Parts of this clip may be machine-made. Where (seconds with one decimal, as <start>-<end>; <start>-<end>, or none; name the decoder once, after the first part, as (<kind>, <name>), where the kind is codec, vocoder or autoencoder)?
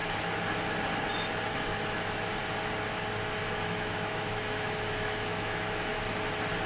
1.7-2.3 (autoencoder, DAC-VAE); 3.4-6.0